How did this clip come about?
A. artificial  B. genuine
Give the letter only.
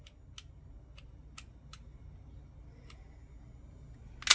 B